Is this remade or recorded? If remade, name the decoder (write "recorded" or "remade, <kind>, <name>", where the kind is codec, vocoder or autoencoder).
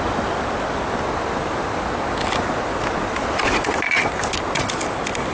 recorded